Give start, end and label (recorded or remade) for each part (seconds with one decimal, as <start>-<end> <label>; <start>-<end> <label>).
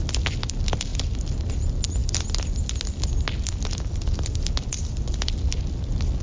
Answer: 0.0-6.2 recorded